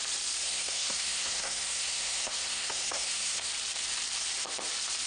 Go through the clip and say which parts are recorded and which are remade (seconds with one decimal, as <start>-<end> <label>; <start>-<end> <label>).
0.0-0.4 recorded; 0.4-3.5 remade; 3.5-5.1 recorded

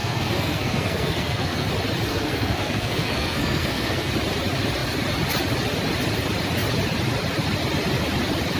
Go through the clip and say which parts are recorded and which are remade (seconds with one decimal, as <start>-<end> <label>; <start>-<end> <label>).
0.0-1.7 remade; 1.7-2.1 recorded; 2.1-4.1 remade; 4.1-8.6 recorded

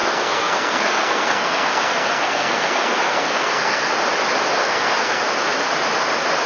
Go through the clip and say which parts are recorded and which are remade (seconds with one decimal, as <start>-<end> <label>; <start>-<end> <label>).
0.0-3.9 remade; 3.9-4.6 recorded; 4.6-5.2 remade; 5.2-6.5 recorded